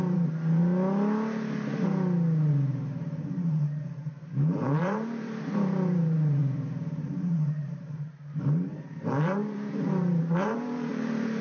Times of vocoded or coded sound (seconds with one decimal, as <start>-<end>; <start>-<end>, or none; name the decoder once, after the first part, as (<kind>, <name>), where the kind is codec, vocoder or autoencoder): 0.0-0.6 (vocoder, BigVGAN v2); 2.5-11.4